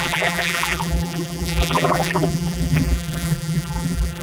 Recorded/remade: remade